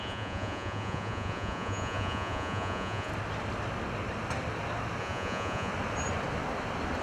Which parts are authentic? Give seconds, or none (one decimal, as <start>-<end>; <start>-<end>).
3.1-5.0; 5.7-7.0